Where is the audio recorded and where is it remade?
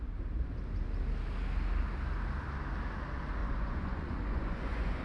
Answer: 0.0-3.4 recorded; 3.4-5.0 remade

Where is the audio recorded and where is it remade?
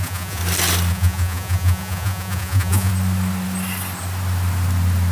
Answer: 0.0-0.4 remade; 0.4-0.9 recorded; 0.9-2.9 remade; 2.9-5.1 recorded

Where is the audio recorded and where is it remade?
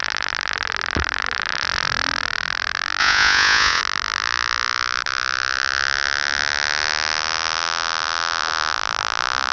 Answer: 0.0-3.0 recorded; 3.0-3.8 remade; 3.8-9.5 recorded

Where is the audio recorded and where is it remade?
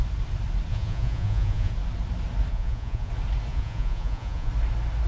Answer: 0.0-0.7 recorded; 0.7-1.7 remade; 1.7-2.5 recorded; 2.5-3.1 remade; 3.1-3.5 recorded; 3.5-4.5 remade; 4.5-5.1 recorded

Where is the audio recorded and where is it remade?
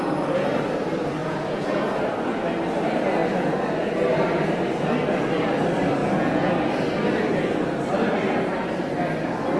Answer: 0.0-1.2 recorded; 1.2-2.0 remade; 2.0-6.0 recorded; 6.0-6.5 remade; 6.5-9.6 recorded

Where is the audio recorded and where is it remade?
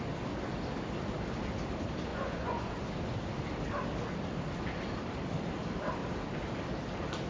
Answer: 0.0-2.1 recorded; 2.1-2.7 remade; 2.7-7.3 recorded